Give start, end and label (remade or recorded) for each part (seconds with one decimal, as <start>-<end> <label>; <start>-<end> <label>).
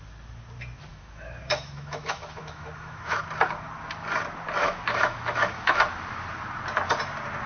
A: 0.0-0.9 recorded; 0.9-3.2 remade; 3.2-4.6 recorded; 4.6-5.8 remade; 5.8-7.5 recorded